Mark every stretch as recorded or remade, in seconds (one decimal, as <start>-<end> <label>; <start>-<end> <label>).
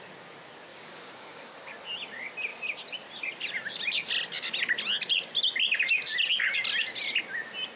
0.0-0.7 recorded; 0.7-1.7 remade; 1.7-7.8 recorded